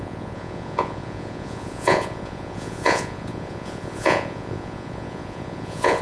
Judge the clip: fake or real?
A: fake